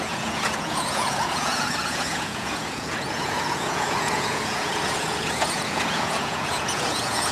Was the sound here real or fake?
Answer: fake